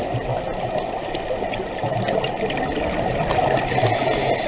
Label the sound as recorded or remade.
recorded